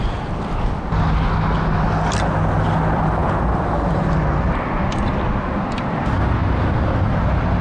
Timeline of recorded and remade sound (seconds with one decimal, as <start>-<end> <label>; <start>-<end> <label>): 0.0-7.6 recorded

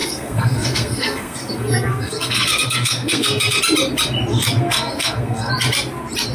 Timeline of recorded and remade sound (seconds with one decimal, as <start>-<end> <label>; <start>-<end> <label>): 0.0-3.6 remade; 3.6-4.3 recorded; 4.3-5.5 remade; 5.5-6.3 recorded

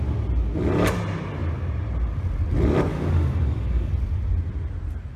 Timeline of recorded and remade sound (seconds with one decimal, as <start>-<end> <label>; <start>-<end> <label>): 0.0-2.9 recorded; 2.9-3.9 remade; 3.9-5.2 recorded